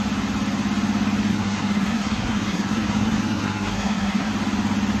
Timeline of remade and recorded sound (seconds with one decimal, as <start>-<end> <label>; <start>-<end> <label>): 0.0-1.3 recorded; 1.3-4.3 remade; 4.3-5.0 recorded